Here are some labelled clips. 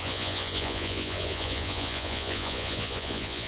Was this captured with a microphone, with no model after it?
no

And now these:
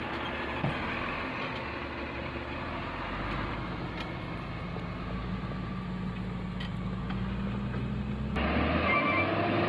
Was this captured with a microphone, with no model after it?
yes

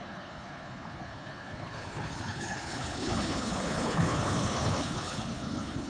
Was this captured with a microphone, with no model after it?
no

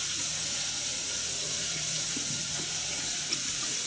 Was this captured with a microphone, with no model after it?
no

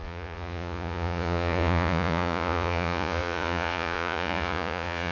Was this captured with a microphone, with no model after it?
no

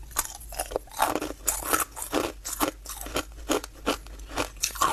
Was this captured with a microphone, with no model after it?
yes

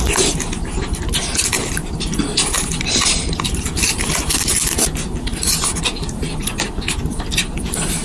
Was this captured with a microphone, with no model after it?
no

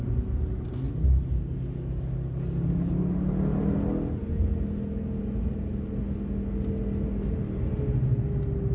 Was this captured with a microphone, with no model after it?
yes